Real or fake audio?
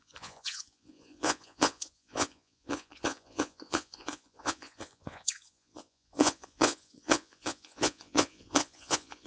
fake